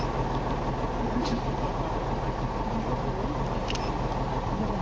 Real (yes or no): yes